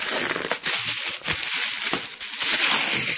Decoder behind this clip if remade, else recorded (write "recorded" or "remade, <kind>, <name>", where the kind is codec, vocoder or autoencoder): recorded